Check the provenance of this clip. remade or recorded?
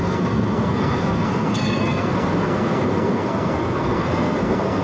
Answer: remade